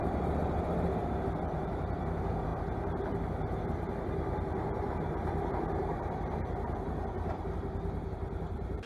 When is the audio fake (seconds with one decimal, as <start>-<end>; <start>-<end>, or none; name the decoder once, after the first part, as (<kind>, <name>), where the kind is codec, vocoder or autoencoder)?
0.0-2.5 (vocoder, BigVGAN v2); 3.0-8.9

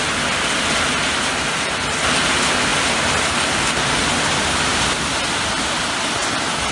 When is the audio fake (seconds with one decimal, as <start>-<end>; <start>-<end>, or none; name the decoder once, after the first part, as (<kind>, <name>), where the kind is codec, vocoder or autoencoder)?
none

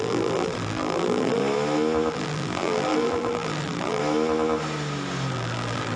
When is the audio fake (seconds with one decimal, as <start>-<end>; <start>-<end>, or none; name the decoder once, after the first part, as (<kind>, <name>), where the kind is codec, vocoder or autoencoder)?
0.0-1.4 (vocoder, BigVGAN v2); 2.1-4.0; 5.3-6.0

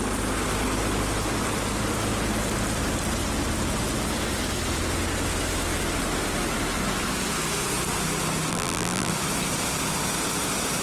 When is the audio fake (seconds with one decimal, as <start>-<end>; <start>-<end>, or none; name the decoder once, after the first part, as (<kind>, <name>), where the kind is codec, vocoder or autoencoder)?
8.5-9.1 (vocoder, BigVGAN v2)

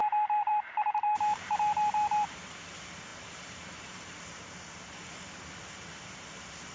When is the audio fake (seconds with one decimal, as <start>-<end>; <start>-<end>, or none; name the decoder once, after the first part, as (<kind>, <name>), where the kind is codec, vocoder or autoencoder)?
0.0-2.4 (vocoder, BigVGAN v2); 3.1-4.7

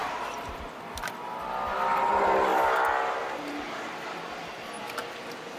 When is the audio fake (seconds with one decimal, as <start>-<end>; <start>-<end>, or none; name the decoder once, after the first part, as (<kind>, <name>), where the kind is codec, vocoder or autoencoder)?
none